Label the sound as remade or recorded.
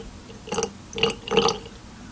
recorded